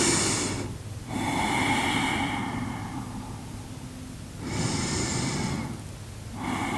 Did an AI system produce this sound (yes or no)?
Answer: no